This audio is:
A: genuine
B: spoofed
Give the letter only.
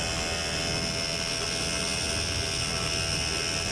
A